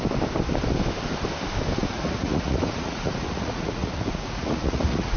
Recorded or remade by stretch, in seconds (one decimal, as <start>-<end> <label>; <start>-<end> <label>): 0.0-1.8 recorded; 1.8-5.2 remade